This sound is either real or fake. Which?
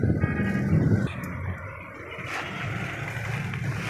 real